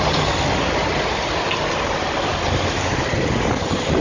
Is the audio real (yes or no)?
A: yes